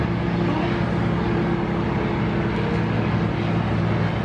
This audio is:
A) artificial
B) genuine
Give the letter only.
B